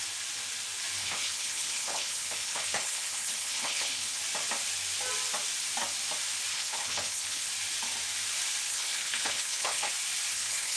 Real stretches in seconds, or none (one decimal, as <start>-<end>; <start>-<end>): 0.0-1.0; 4.2-6.5; 7.5-8.7; 9.9-10.3

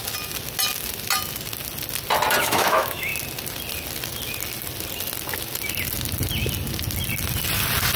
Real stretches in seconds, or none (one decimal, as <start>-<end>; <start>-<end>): 0.0-2.4; 3.1-8.0

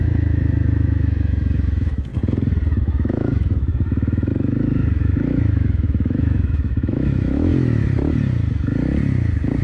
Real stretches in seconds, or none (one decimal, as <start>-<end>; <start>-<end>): 2.1-2.8; 4.3-5.0; 7.5-9.6

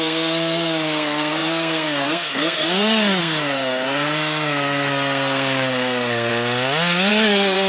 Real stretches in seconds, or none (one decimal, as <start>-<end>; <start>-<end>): 6.3-7.1